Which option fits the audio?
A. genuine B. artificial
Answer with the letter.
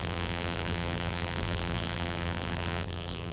B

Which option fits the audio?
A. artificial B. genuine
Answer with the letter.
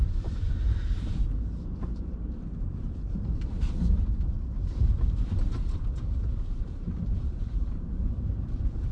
A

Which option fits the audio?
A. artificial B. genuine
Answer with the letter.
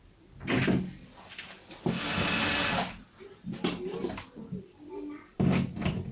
B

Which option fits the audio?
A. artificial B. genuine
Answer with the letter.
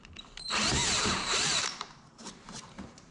A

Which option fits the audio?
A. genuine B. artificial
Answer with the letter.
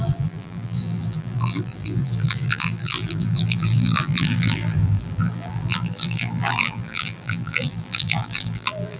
B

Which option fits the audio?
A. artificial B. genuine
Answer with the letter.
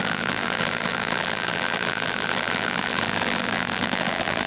A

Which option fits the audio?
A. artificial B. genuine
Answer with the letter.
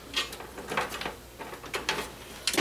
B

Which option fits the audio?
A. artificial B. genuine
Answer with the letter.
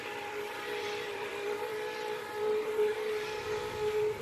A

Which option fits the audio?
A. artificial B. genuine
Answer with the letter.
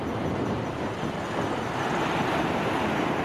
B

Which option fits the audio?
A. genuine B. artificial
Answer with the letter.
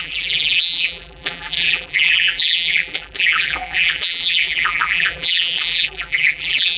B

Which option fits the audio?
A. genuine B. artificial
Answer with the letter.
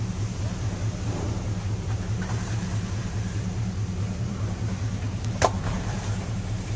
B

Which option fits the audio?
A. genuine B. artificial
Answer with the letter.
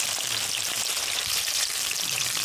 B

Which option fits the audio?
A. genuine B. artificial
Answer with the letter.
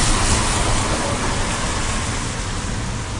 A